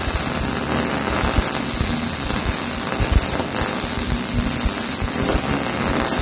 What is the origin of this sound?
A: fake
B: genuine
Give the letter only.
B